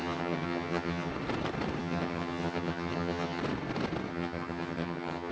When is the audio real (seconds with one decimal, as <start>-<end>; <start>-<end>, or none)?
1.1-1.8; 3.4-4.1